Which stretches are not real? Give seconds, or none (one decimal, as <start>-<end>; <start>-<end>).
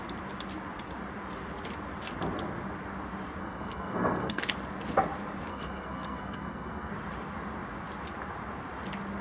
3.4-4.4; 5.5-6.9